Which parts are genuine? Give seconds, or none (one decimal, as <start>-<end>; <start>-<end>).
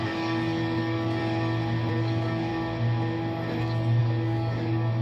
1.2-1.9; 2.5-3.6